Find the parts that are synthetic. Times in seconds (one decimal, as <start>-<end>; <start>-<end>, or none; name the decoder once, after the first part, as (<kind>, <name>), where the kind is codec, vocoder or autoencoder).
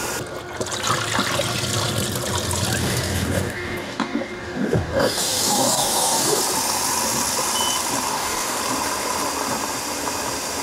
2.8-6.4 (codec, DAC); 8.1-8.6